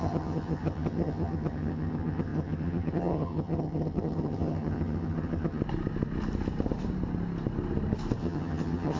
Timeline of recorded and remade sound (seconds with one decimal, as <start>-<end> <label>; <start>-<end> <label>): 0.0-5.6 remade; 5.6-8.2 recorded; 8.2-9.0 remade

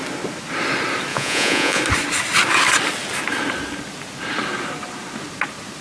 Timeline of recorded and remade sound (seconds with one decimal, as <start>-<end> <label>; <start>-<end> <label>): 0.0-1.1 recorded; 1.1-1.8 remade; 1.8-5.8 recorded

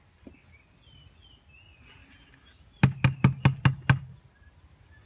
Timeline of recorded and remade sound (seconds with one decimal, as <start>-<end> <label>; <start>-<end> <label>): 0.0-5.1 recorded